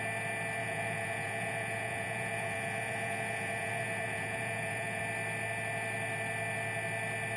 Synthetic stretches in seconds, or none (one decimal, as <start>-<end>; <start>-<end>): 0.6-5.0